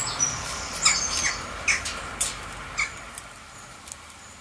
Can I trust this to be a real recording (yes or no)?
yes